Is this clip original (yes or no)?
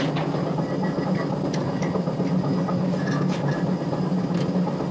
yes